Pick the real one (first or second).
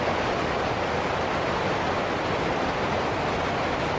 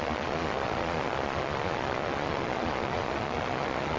first